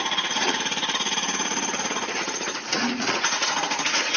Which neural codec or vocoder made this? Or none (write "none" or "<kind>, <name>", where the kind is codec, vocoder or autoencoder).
vocoder, Vocos